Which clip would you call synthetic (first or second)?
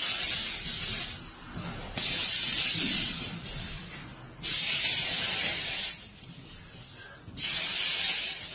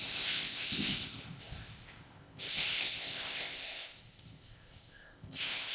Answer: second